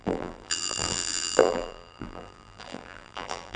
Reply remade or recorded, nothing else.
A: remade